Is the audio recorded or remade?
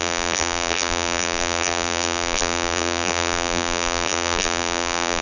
remade